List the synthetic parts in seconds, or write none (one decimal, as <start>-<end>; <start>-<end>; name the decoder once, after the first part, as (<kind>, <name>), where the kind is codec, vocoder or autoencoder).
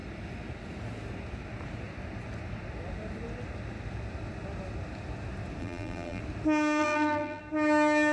5.6-6.2 (vocoder, BigVGAN v2); 6.8-7.4